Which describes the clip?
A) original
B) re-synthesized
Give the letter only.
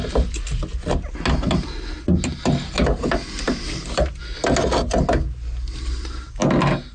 A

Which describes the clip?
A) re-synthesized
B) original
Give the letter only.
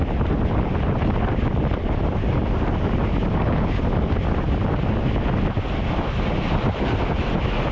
B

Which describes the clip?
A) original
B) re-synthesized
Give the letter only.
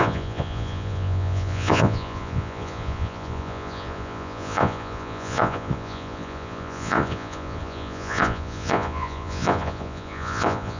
B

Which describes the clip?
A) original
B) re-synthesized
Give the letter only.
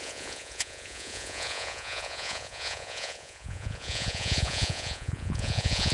B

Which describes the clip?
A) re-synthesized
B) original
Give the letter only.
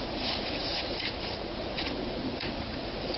A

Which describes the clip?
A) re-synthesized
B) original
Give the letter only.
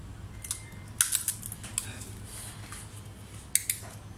B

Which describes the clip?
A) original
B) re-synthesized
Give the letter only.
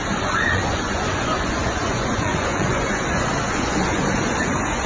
B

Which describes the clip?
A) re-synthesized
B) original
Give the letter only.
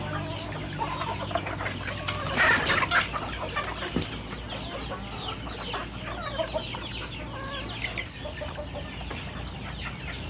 B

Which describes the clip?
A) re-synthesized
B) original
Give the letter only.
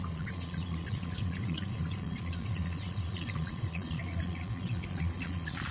A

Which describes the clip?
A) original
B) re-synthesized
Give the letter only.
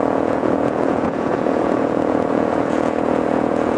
B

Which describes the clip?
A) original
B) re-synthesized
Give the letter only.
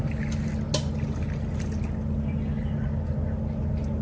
A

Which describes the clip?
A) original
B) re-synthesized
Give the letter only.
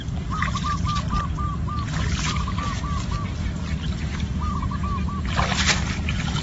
A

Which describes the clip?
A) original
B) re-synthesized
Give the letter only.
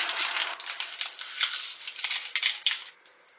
A